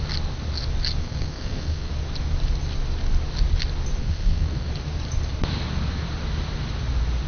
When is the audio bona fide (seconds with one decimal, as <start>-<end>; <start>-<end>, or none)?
0.0-1.0; 1.9-4.0; 4.7-7.3